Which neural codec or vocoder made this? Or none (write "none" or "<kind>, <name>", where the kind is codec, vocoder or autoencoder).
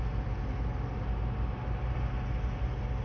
none